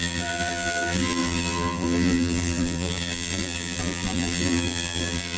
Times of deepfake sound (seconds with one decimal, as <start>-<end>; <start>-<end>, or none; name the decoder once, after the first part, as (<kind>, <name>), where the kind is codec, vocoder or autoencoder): 0.0-5.4 (vocoder, BigVGAN v2)